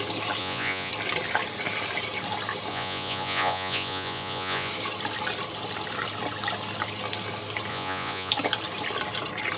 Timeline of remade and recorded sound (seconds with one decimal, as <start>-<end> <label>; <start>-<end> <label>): 0.0-0.4 recorded; 0.4-0.9 remade; 0.9-2.7 recorded; 2.7-4.7 remade; 4.7-7.7 recorded; 7.7-8.3 remade; 8.3-9.6 recorded